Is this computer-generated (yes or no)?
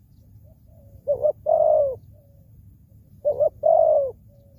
yes